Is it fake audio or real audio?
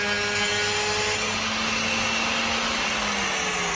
real